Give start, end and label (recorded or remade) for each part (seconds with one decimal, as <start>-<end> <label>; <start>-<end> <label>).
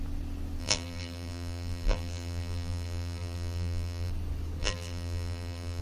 0.0-0.6 recorded; 0.6-4.1 remade; 4.1-4.6 recorded; 4.6-5.8 remade